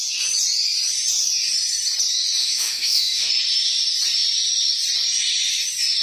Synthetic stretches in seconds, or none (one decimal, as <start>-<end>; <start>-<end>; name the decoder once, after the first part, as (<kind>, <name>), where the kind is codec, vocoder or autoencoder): 2.4-3.3 (autoencoder, DAC-VAE)